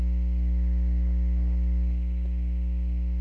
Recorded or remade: recorded